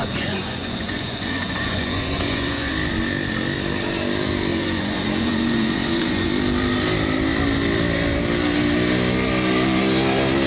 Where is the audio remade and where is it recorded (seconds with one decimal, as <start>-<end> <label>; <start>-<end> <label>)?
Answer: 0.0-2.7 remade; 2.7-4.5 recorded; 4.5-6.3 remade; 6.3-10.5 recorded